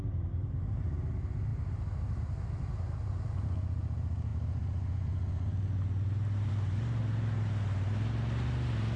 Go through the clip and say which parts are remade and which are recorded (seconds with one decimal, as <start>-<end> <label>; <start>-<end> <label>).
0.0-9.0 recorded